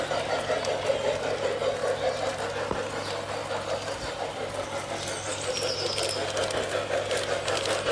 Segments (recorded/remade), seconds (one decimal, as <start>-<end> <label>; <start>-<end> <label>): 0.0-7.9 recorded